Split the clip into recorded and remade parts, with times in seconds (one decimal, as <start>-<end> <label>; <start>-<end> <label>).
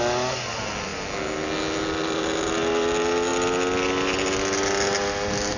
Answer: 0.0-5.6 recorded